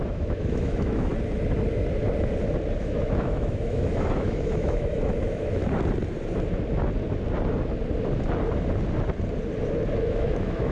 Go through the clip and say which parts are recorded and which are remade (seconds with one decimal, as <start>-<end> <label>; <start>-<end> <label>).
0.0-1.1 remade; 1.1-2.8 recorded; 2.8-5.6 remade; 5.6-10.0 recorded; 10.0-10.7 remade